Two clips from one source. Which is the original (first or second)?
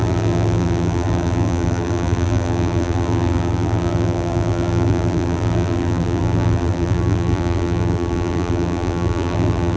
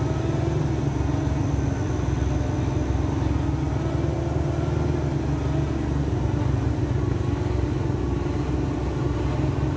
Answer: second